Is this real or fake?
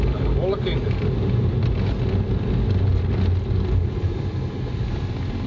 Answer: real